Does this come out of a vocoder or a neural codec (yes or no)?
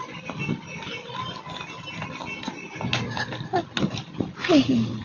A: no